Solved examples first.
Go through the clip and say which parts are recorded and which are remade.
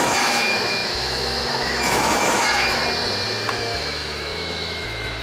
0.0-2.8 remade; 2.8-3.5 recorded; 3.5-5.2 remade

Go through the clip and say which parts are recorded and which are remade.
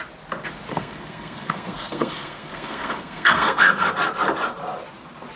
0.0-0.7 recorded; 0.7-3.9 remade; 3.9-5.4 recorded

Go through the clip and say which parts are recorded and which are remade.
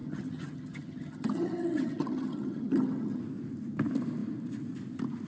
0.0-3.2 remade; 3.2-5.3 recorded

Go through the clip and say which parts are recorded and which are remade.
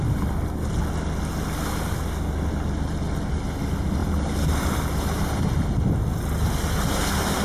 0.0-4.0 recorded; 4.0-5.4 remade; 5.4-7.4 recorded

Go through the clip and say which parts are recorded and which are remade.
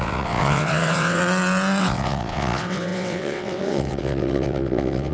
0.0-1.2 remade; 1.2-1.8 recorded; 1.8-5.1 remade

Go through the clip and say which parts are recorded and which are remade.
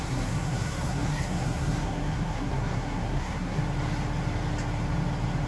0.0-3.6 remade; 3.6-5.5 recorded